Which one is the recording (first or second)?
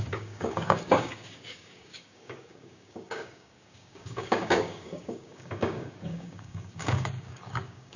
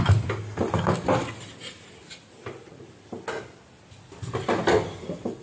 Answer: second